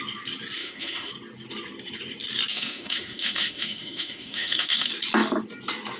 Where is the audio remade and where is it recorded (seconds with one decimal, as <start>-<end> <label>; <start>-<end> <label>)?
0.0-0.6 recorded; 0.6-1.1 remade; 1.1-2.5 recorded; 2.5-4.9 remade; 4.9-6.0 recorded